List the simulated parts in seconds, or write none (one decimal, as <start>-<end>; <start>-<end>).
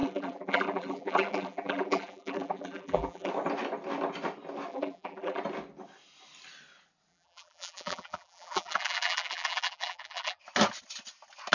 0.0-3.3; 4.7-5.4; 7.1-10.4